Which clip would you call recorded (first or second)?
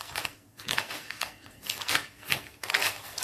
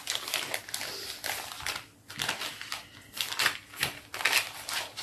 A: second